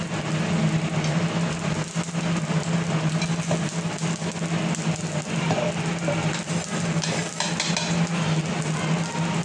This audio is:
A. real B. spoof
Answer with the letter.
A